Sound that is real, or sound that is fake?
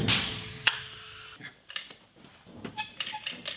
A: real